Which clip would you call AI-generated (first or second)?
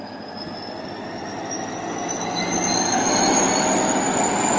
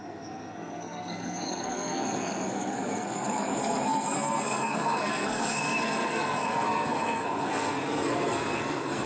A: second